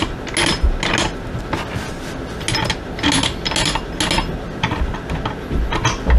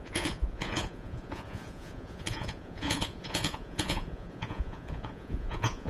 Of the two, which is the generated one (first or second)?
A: second